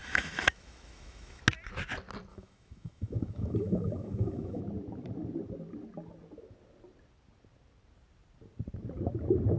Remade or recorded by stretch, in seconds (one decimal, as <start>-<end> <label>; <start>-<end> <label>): 0.0-1.4 remade; 1.4-2.3 recorded; 2.3-4.6 remade; 4.6-9.6 recorded